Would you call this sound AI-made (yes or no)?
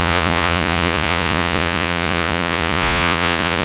yes